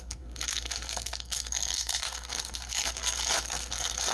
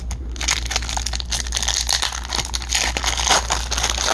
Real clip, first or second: second